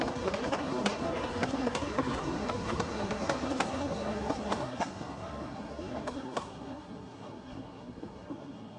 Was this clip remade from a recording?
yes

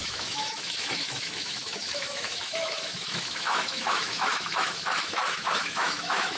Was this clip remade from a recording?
yes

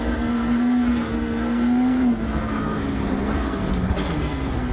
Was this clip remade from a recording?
yes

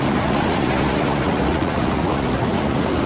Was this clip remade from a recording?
yes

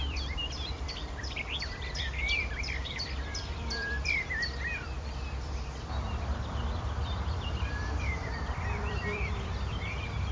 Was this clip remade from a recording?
yes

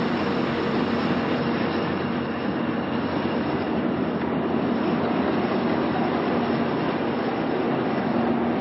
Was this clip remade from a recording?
no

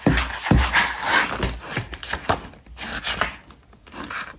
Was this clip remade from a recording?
no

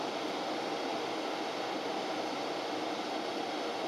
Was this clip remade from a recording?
no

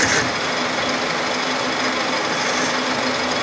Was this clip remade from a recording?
no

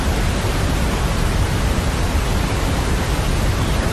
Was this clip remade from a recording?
no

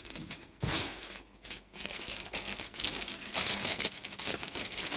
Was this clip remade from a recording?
yes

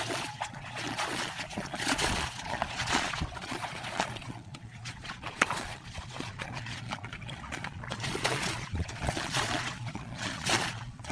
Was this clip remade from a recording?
yes